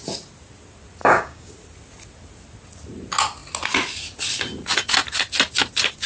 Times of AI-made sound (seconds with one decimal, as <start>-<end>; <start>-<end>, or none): 1.0-1.5